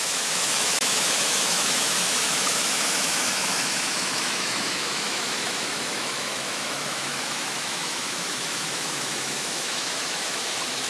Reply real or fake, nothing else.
fake